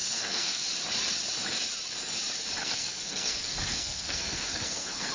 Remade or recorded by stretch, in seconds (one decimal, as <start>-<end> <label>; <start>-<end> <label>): 0.0-0.6 remade; 0.6-2.6 recorded; 2.6-5.1 remade